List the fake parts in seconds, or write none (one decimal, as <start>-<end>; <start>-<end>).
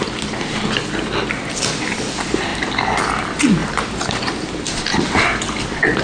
3.6-6.0